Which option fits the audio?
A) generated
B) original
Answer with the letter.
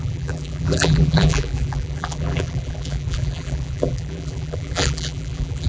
A